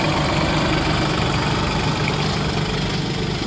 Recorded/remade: recorded